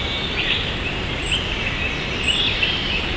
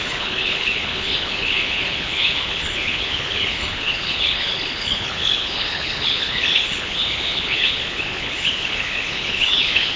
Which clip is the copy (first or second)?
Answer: second